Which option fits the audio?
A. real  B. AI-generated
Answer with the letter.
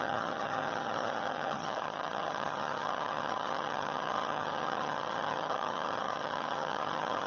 B